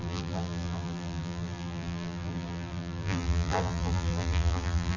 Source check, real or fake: fake